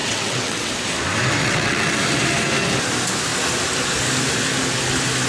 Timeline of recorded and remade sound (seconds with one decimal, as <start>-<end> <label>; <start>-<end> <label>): 0.0-0.7 remade; 0.7-1.4 recorded; 1.4-1.9 remade; 1.9-5.3 recorded